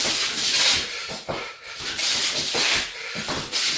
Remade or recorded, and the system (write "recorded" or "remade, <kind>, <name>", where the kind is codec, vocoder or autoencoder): recorded